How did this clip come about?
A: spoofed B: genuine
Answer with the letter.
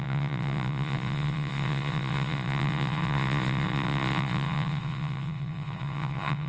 A